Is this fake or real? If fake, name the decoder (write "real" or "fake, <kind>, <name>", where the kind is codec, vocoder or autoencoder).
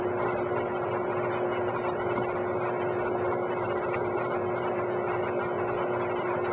real